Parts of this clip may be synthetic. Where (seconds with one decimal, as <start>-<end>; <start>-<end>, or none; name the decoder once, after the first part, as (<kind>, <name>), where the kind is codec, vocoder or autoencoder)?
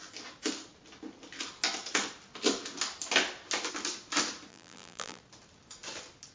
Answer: 4.5-5.2 (vocoder, BigVGAN v2)